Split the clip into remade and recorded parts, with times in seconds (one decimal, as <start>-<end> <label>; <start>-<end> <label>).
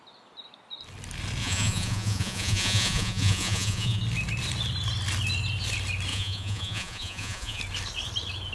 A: 0.0-1.4 recorded; 1.4-4.0 remade; 4.0-6.1 recorded; 6.1-7.6 remade; 7.6-8.5 recorded